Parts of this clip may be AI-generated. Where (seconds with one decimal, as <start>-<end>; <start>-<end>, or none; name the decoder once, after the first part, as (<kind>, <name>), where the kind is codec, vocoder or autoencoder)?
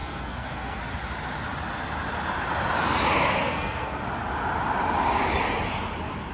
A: 0.0-0.8 (codec, SNAC); 3.4-4.0